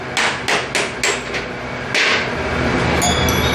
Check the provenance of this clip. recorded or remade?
recorded